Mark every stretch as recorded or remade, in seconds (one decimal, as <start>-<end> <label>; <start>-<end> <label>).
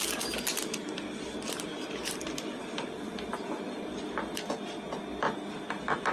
0.0-0.5 recorded; 0.5-4.2 remade; 4.2-6.1 recorded